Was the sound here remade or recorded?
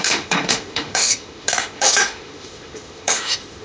remade